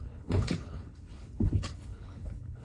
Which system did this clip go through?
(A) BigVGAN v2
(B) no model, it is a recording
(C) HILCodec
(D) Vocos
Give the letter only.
C